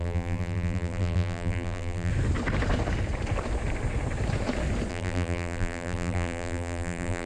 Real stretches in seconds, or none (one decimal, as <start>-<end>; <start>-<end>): 2.1-4.9